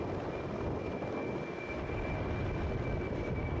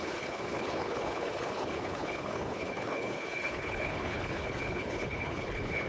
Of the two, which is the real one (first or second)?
first